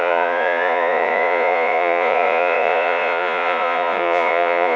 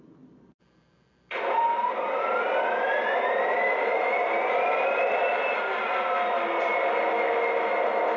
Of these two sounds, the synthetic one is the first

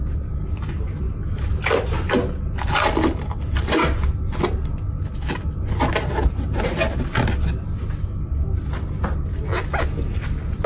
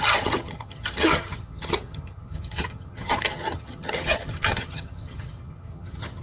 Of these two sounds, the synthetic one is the second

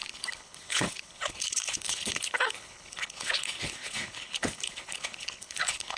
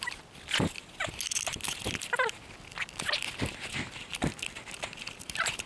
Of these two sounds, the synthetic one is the first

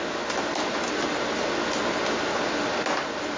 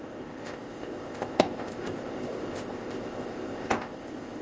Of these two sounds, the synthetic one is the second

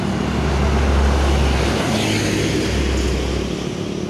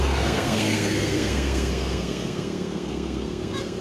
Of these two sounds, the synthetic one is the second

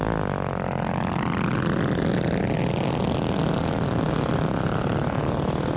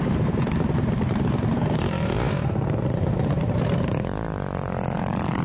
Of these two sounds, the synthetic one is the second